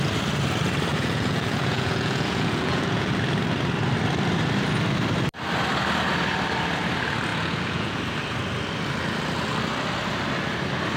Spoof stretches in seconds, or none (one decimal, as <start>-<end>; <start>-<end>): 0.9-3.1; 7.3-8.0